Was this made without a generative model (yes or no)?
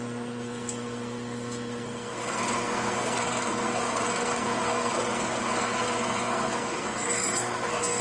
no